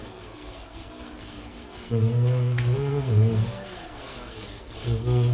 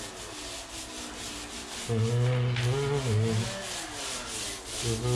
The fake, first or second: first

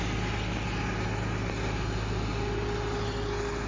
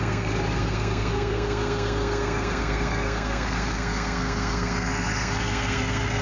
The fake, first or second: second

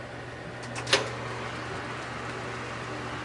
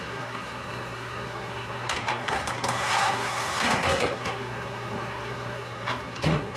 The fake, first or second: second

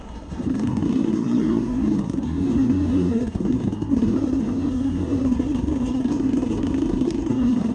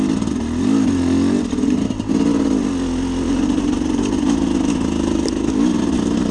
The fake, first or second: first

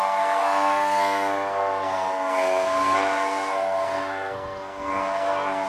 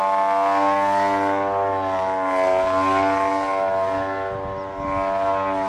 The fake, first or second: first